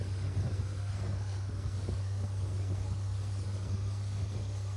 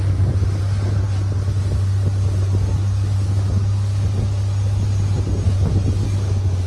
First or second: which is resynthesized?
first